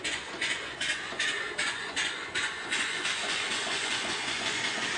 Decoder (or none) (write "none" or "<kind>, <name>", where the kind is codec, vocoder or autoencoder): vocoder, Vocos